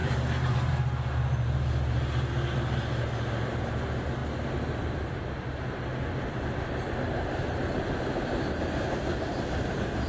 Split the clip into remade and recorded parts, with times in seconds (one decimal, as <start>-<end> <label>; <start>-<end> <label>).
0.0-0.7 remade; 0.7-10.1 recorded